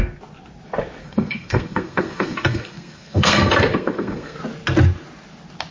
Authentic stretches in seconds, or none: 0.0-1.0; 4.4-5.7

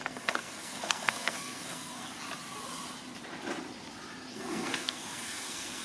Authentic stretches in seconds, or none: 2.1-4.3

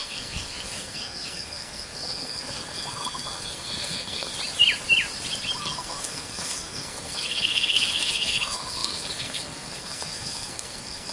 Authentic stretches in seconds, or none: 4.3-5.6

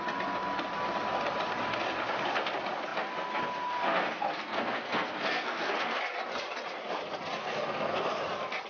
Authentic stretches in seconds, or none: 0.0-3.8; 6.0-7.4; 8.2-8.7